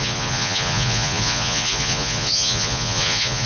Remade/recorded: remade